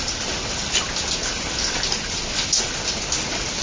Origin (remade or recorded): recorded